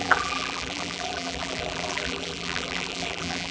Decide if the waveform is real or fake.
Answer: fake